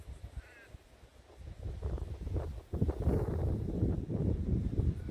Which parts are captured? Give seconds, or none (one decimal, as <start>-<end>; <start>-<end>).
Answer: 0.0-5.1